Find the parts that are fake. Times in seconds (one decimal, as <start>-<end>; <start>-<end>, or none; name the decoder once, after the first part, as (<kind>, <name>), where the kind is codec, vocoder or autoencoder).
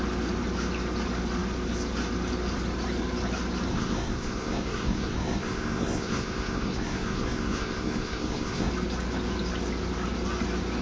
3.7-8.7 (codec, SNAC)